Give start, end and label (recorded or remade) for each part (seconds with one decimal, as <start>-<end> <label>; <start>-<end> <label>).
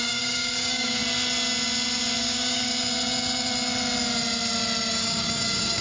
0.0-1.0 remade; 1.0-2.2 recorded; 2.2-2.7 remade; 2.7-4.9 recorded; 4.9-5.8 remade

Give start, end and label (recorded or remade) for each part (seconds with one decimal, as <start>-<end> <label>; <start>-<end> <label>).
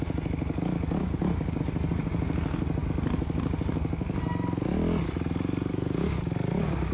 0.0-1.0 recorded; 1.0-1.6 remade; 1.6-5.7 recorded; 5.7-6.2 remade; 6.2-6.9 recorded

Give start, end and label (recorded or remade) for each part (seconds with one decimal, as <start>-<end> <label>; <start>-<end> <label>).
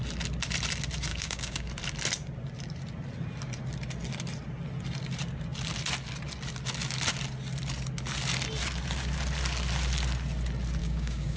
0.0-1.1 recorded; 1.1-1.7 remade; 1.7-10.8 recorded; 10.8-11.4 remade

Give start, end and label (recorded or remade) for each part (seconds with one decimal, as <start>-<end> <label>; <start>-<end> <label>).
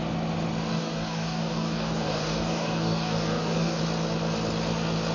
0.0-0.7 recorded; 0.7-3.8 remade; 3.8-5.1 recorded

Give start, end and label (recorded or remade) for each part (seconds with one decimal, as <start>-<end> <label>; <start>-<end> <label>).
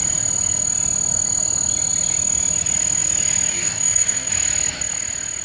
0.0-3.5 recorded; 3.5-4.3 remade; 4.3-5.4 recorded